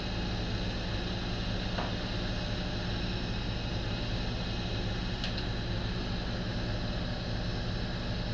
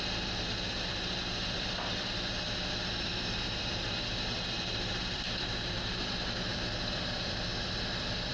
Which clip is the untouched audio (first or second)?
first